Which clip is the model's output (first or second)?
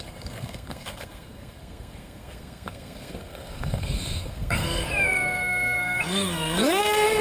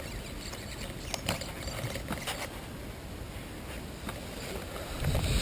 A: first